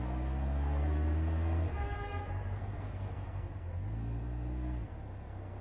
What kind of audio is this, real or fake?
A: fake